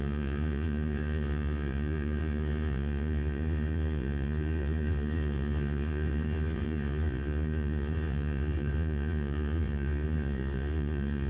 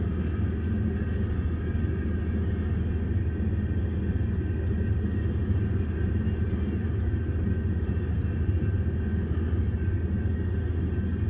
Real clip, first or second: second